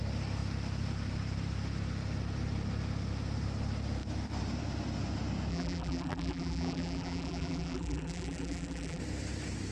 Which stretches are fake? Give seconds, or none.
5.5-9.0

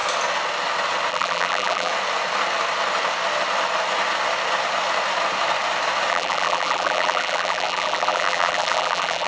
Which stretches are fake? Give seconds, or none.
1.1-1.9; 6.1-9.3

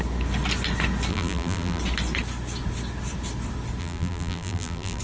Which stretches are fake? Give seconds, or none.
1.1-1.8; 3.8-5.0